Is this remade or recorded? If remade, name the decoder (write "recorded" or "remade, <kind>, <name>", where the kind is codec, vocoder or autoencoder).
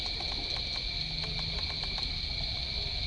recorded